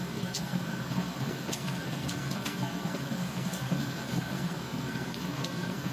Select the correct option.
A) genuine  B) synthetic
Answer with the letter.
B